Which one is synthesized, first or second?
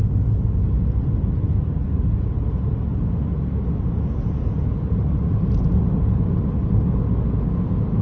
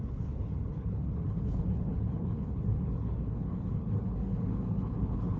second